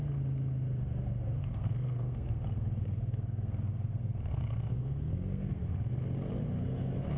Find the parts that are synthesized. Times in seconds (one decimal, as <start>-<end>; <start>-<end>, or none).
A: 1.4-5.6